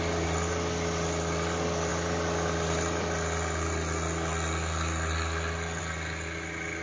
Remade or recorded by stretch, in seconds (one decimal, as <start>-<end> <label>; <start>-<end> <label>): 0.0-6.8 recorded